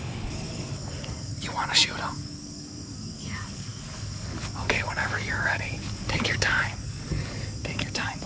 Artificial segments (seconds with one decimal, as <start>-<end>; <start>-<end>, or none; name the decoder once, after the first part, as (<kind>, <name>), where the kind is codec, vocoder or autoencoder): 0.0-1.3 (codec, DAC); 2.0-8.3